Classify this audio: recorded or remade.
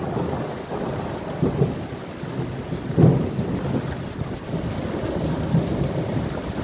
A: recorded